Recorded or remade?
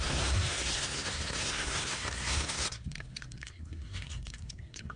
remade